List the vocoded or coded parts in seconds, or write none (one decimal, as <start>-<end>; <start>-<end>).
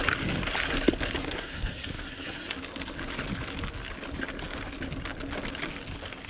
1.2-2.5